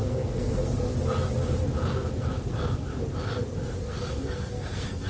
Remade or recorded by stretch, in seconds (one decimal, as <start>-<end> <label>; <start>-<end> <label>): 0.0-0.9 remade; 0.9-2.2 recorded; 2.2-2.9 remade; 2.9-3.8 recorded; 3.8-5.1 remade